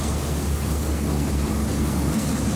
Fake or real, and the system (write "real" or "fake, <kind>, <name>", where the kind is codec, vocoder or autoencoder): fake, codec, SNAC